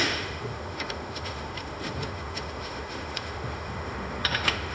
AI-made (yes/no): yes